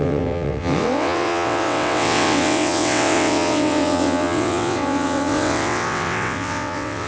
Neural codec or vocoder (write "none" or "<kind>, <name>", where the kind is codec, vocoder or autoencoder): vocoder, WaveNeXt